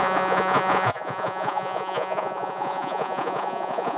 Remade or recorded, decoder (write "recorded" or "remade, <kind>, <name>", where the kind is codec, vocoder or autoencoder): remade, vocoder, Vocos